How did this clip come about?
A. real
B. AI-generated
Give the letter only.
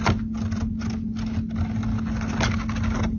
A